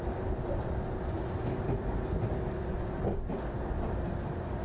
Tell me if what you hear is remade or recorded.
recorded